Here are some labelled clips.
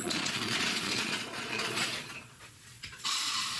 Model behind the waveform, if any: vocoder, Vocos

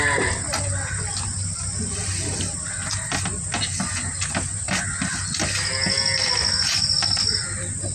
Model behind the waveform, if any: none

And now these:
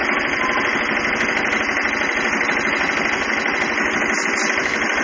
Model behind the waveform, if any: none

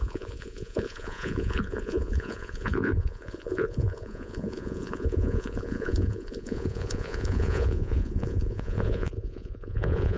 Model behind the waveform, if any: vocoder, Vocos